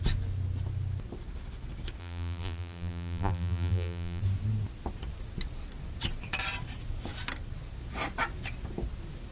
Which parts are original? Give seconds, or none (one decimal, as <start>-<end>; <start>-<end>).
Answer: 0.0-2.0; 4.2-9.3